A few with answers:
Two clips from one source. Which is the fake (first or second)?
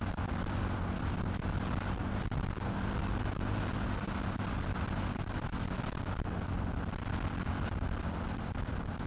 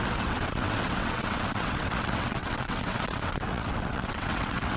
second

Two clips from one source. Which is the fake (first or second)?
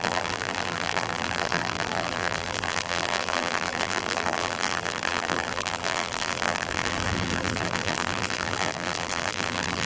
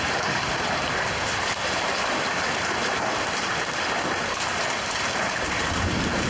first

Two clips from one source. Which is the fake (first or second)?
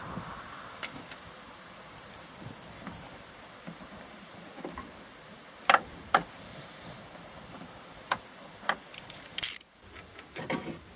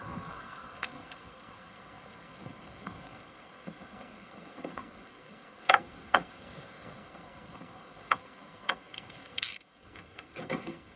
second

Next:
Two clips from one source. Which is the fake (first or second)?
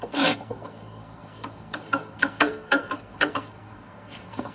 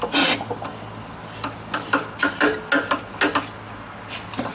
first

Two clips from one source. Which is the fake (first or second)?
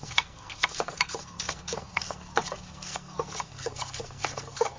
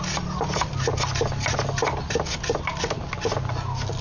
first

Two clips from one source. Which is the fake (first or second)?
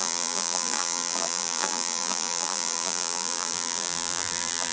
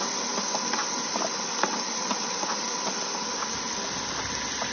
first